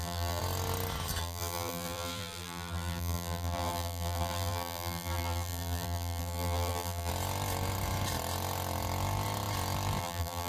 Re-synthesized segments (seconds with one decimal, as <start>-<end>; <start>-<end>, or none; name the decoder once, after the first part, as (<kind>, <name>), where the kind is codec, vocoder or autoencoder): 0.0-0.4 (vocoder, BigVGAN v2); 1.2-7.1; 10.0-10.5